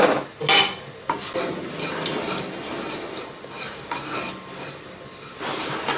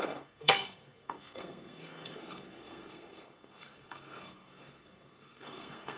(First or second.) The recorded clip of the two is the first